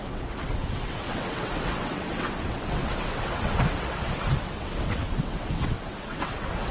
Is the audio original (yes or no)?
no